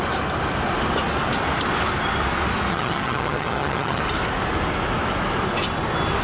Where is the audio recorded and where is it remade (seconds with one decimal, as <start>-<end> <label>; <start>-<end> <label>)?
0.0-2.7 recorded; 2.7-4.0 remade; 4.0-6.2 recorded